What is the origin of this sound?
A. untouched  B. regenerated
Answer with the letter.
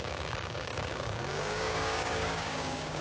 B